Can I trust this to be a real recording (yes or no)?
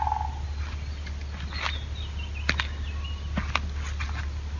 yes